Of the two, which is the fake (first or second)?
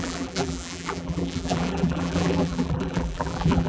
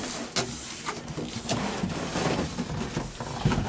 first